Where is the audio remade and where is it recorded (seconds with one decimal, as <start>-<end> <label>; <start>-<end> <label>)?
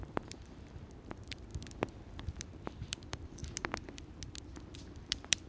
0.0-1.5 remade; 1.5-2.3 recorded; 2.3-3.4 remade; 3.4-4.7 recorded; 4.7-5.5 remade